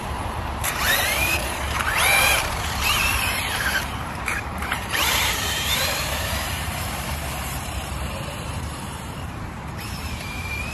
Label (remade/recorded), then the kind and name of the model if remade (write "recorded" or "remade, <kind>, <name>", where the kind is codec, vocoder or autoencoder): remade, vocoder, BigVGAN v2